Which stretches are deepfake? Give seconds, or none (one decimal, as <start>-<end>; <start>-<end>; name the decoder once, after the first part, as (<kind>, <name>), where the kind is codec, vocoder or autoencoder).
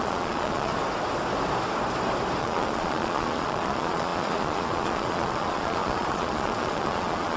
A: 0.0-0.7 (vocoder, Vocos); 2.4-7.4